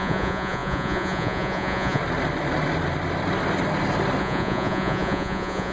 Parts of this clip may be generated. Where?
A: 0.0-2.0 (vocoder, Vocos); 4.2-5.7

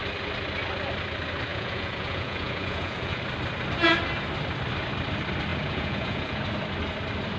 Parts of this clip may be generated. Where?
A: 1.5-3.2 (vocoder, Vocos); 5.5-6.4

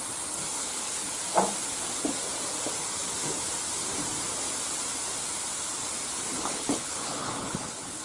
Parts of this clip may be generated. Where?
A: 0.6-1.2 (codec, HILCodec); 6.3-8.0

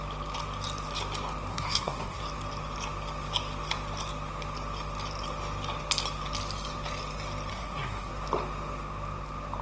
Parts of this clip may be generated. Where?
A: 1.5-2.2 (codec, SNAC); 7.5-8.1

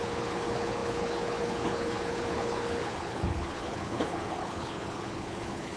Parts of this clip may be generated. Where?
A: 0.0-5.8 (codec, HILCodec)

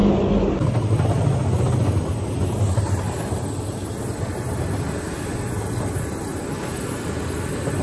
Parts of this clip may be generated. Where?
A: none

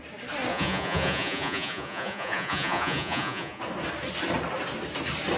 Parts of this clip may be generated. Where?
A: 0.5-3.6 (vocoder, Vocos)